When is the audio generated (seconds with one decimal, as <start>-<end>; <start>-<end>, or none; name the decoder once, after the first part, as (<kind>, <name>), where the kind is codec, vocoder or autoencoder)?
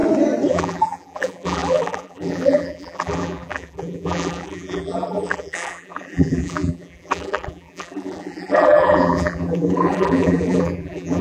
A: 0.5-11.2 (vocoder, BigVGAN v2)